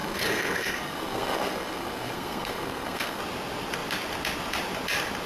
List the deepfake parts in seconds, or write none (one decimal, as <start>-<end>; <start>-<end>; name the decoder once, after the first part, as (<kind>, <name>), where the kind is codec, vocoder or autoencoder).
0.0-3.2 (codec, SNAC)